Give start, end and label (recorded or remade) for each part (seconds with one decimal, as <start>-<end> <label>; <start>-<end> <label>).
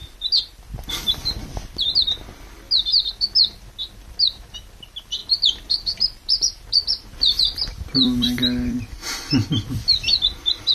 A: 0.0-5.2 recorded; 5.2-10.7 remade